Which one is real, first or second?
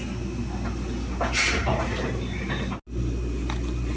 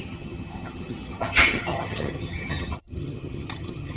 first